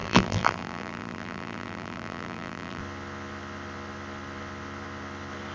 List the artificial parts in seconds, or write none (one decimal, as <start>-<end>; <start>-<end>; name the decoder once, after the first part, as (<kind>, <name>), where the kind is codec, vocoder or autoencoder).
0.0-2.8 (vocoder, BigVGAN v2)